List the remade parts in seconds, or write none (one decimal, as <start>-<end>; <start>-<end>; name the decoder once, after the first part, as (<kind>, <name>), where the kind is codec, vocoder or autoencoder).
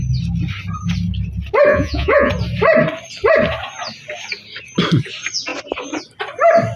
1.7-2.3 (vocoder, Vocos)